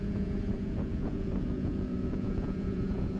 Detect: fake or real fake